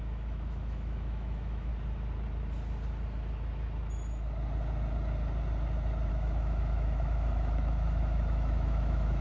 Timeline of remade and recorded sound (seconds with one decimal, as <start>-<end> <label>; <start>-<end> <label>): 0.0-1.7 remade; 1.7-6.1 recorded; 6.1-9.2 remade